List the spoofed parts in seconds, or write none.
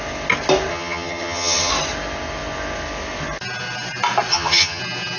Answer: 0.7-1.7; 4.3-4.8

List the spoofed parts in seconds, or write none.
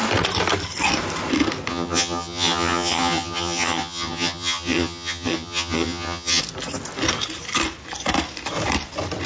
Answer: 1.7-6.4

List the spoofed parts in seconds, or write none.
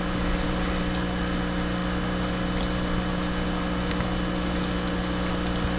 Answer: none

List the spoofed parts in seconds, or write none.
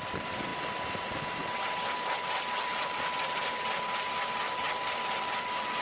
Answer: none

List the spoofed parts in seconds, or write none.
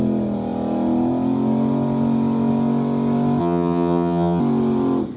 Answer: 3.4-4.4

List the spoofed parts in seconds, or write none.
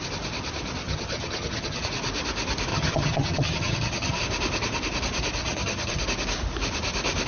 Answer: 0.8-1.8; 2.7-4.2; 5.4-6.0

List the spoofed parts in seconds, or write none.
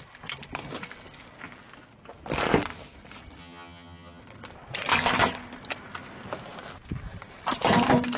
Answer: 3.4-4.2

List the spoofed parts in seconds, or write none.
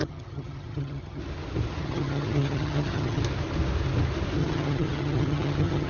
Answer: 0.0-1.2; 1.8-3.2; 4.4-5.9